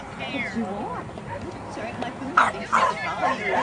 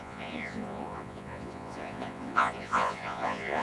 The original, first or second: first